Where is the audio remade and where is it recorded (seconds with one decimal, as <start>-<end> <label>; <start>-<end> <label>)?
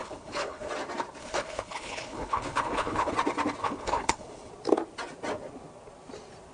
0.0-0.7 remade; 0.7-1.2 recorded; 1.2-3.1 remade; 3.1-3.6 recorded; 3.6-4.5 remade; 4.5-6.5 recorded